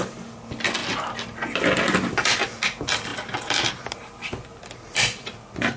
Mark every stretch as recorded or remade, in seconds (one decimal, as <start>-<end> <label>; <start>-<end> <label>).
0.0-5.8 recorded